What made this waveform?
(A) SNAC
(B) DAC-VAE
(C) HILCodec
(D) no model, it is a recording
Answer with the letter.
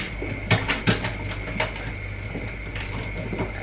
D